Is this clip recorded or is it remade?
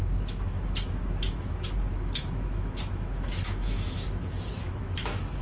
remade